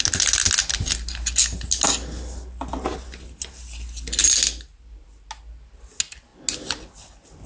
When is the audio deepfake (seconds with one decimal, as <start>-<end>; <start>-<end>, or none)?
none

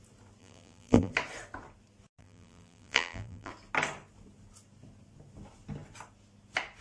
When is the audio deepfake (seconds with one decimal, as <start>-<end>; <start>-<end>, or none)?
0.4-1.1; 2.2-3.5

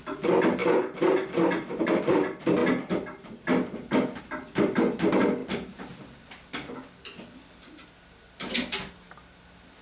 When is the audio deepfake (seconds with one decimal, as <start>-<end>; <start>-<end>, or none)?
none